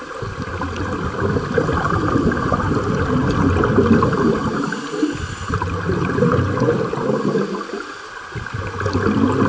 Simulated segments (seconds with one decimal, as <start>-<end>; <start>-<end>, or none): none